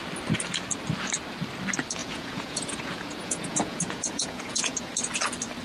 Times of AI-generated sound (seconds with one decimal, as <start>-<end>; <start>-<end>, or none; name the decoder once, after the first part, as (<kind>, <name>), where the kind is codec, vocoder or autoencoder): 2.0-4.9 (vocoder, Vocos)